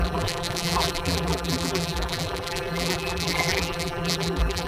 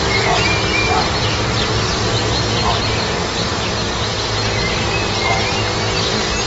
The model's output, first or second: first